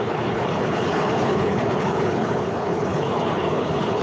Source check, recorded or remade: remade